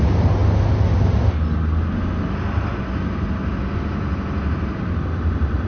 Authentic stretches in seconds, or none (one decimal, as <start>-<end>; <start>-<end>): 0.0-5.7